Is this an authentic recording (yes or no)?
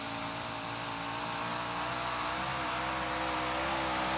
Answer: yes